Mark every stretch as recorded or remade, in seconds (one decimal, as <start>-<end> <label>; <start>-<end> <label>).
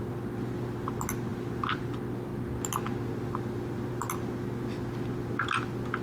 0.0-6.0 recorded